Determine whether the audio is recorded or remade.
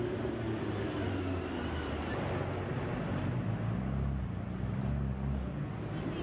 recorded